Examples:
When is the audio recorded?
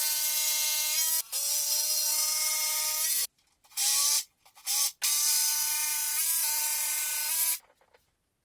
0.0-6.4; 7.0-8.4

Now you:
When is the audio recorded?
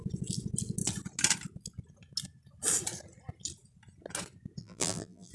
0.0-4.6